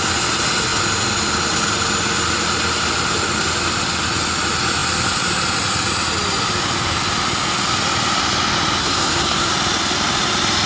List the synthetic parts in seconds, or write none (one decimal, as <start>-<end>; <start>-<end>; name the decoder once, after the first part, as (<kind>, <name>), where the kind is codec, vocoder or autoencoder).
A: 8.8-9.5 (codec, SNAC)

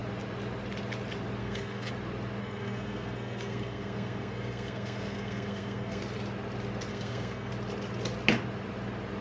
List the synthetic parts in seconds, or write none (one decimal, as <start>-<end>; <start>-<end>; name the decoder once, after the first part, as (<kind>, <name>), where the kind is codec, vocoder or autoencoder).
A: 1.4-1.9 (codec, SNAC); 2.4-6.0; 6.9-7.5